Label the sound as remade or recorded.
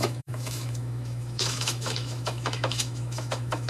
remade